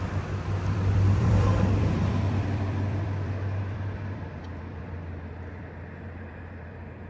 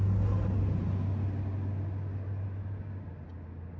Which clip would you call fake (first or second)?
first